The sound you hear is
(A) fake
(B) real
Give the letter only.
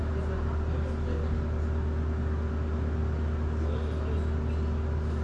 B